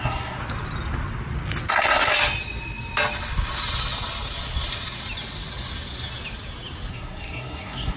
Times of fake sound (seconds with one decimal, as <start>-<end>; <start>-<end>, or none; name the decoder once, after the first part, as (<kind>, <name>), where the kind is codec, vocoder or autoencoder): 0.0-0.4 (codec, SNAC); 1.7-2.1; 6.9-8.0